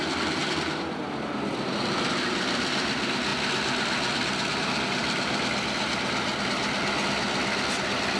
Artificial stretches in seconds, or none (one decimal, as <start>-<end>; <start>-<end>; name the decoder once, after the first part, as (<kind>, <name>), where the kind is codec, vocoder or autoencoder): none